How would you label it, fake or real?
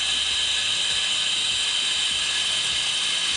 real